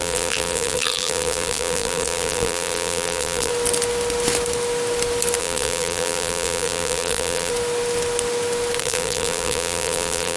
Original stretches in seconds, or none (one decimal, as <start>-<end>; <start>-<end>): 3.5-5.4; 7.5-8.8